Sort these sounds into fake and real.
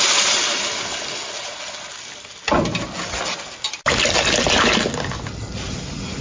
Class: real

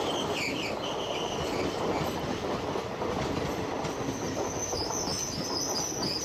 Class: real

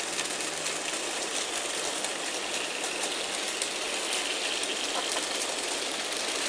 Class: real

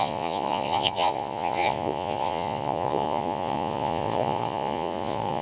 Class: fake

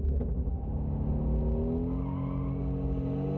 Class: real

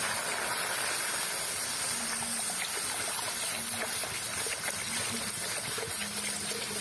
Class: real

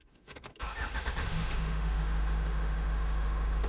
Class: fake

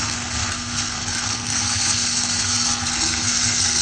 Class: fake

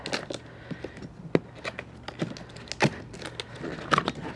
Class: real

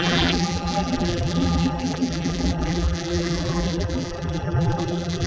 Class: fake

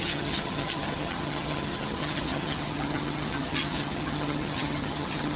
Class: fake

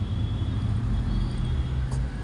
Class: real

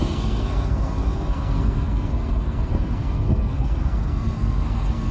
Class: fake